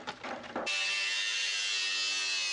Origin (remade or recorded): recorded